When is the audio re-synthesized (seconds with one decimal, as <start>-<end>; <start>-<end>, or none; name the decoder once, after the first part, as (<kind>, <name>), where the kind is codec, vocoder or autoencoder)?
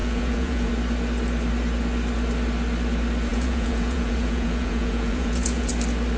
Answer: 0.0-0.7 (vocoder, Vocos); 3.3-5.7